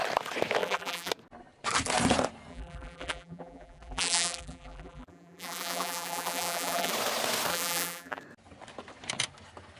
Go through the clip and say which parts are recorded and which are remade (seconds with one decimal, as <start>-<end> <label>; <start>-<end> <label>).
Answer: 0.0-0.6 recorded; 0.6-1.1 remade; 1.1-2.5 recorded; 2.5-6.9 remade; 6.9-7.5 recorded; 7.5-8.2 remade; 8.2-9.8 recorded